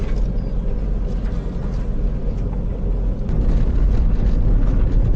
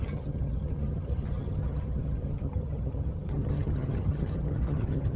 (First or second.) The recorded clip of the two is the first